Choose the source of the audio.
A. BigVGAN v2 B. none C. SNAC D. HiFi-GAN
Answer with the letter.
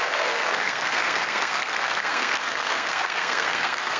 C